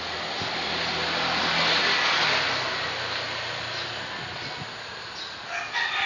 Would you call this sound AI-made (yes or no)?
no